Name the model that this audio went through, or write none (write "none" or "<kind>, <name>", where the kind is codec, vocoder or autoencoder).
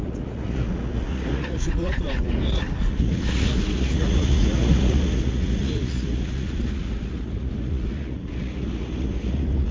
vocoder, Vocos